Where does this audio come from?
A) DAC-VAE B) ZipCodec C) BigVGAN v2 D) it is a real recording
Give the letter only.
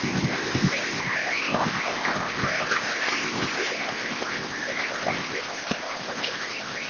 B